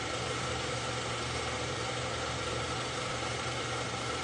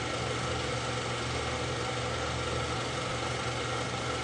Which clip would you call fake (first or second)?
first